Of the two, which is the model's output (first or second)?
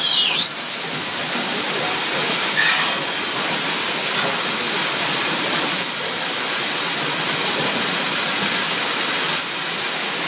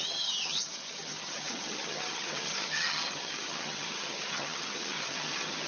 second